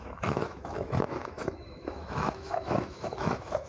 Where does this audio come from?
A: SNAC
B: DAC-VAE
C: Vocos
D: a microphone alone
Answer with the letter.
B